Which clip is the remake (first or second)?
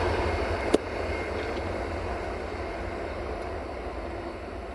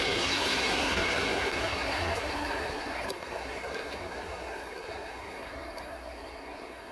second